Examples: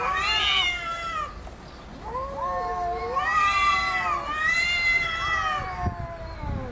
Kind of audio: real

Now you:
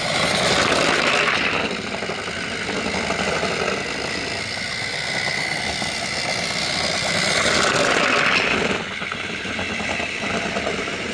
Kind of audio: real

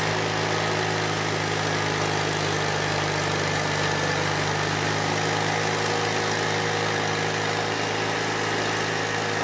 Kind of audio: real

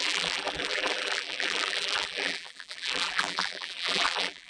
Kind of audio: fake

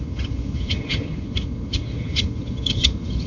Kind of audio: fake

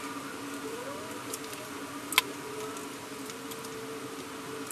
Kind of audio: real